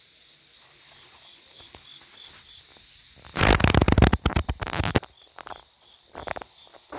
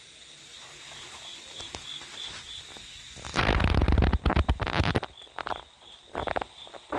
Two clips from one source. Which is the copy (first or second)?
first